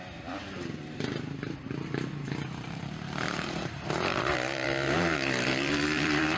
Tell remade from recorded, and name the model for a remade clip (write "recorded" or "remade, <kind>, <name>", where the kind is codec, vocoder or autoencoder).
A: remade, vocoder, BigVGAN v2